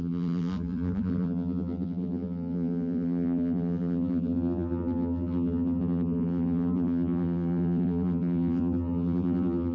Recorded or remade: remade